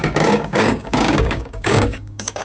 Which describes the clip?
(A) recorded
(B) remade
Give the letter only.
B